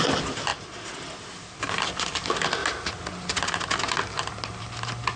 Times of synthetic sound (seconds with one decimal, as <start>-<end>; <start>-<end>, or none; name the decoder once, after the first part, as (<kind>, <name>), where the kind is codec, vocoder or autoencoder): none